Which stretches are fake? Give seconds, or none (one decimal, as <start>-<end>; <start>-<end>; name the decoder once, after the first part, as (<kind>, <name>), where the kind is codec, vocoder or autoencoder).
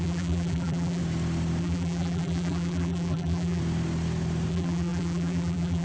0.0-1.0 (vocoder, BigVGAN v2); 1.6-3.6; 4.5-5.8